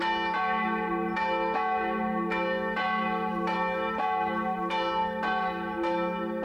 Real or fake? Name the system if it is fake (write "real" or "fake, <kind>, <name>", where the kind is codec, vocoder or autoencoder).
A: real